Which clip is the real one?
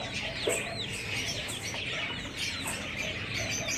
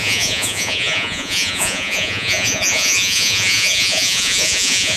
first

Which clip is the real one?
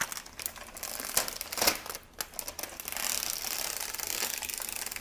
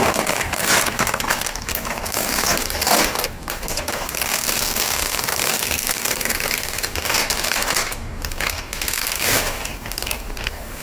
first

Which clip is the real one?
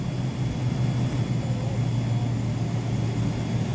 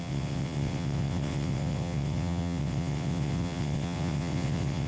first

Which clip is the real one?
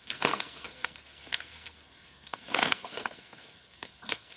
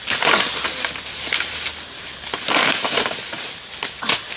second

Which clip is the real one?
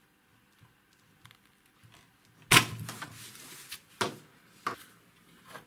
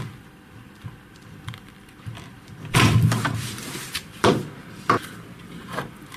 first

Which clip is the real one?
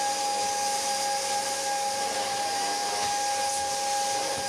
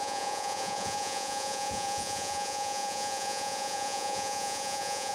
first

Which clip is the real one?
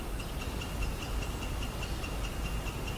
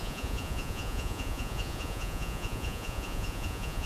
first